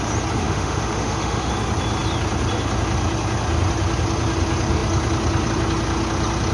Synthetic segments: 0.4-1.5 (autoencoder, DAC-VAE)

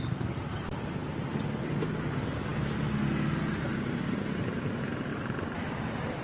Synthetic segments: 5.1-6.2 (vocoder, BigVGAN v2)

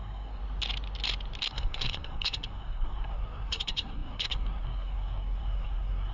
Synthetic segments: 0.0-0.4 (codec, SNAC); 1.5-6.1

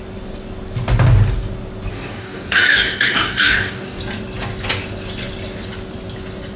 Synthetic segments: 1.9-4.0 (codec, DAC)

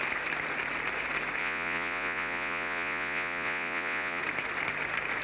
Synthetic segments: 1.4-4.2 (vocoder, Vocos)

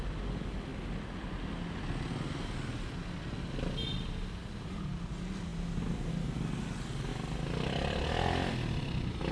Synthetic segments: none

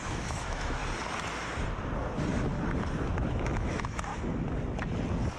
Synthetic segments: 0.0-0.8 (autoencoder, DAC-VAE); 3.3-4.1

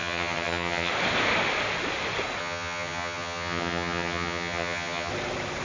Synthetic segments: 0.0-0.9 (vocoder, HiFi-GAN); 2.4-5.1